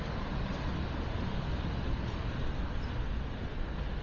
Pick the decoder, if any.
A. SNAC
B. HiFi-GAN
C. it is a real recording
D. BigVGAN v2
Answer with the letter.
C